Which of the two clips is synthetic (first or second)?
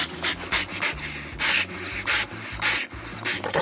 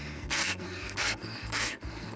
second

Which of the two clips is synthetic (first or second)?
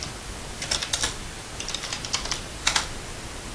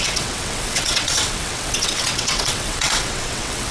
second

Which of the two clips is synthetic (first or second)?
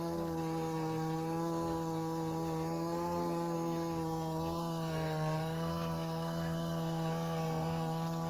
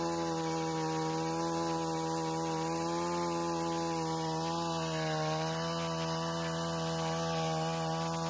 first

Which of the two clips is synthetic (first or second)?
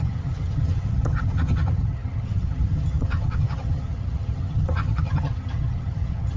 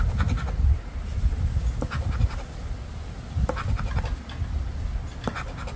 first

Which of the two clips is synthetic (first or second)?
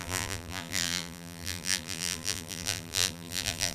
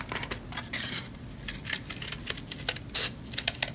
first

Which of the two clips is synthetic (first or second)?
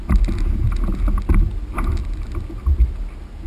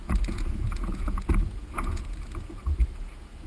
second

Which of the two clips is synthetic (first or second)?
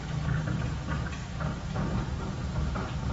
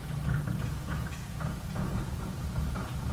second